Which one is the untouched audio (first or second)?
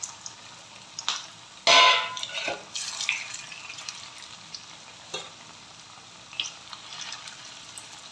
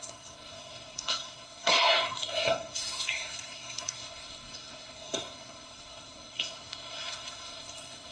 first